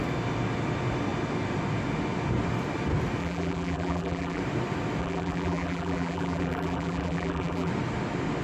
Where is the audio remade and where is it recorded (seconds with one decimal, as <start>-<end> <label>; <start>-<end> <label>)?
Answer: 0.0-3.2 recorded; 3.2-4.4 remade; 4.4-5.0 recorded; 5.0-7.7 remade; 7.7-8.4 recorded